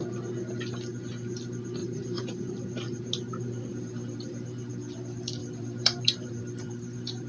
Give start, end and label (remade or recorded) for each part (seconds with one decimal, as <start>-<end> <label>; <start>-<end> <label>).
0.0-1.8 recorded; 1.8-2.4 remade; 2.4-3.7 recorded; 3.7-4.7 remade; 4.7-5.4 recorded; 5.4-7.3 remade

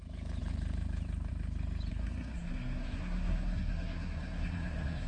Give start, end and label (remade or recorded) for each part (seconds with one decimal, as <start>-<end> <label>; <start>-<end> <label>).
0.0-1.9 recorded; 1.9-5.1 remade

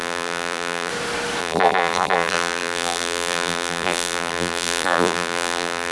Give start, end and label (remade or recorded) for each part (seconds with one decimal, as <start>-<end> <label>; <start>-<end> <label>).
0.0-0.9 remade; 0.9-1.4 recorded; 1.4-5.9 remade

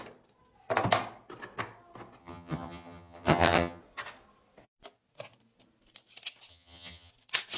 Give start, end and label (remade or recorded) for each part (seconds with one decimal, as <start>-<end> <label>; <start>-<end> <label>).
0.0-2.2 recorded; 2.2-3.8 remade; 3.8-6.5 recorded; 6.5-7.1 remade; 7.1-7.6 recorded